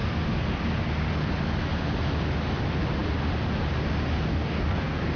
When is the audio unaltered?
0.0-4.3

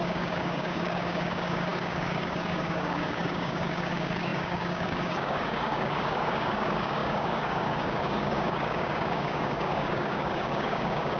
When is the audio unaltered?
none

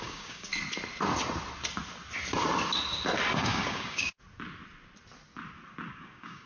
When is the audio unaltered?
0.5-3.3; 4.1-5.9

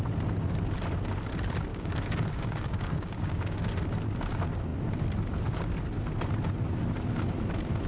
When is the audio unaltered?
0.0-1.7; 3.7-7.9

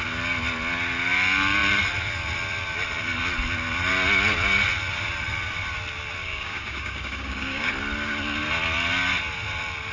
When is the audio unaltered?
0.0-6.2; 7.7-9.9

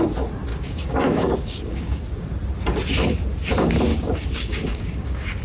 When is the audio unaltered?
0.0-0.5; 2.0-3.9